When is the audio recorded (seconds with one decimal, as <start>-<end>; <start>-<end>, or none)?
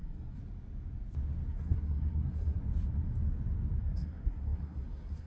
0.4-1.5; 2.6-3.8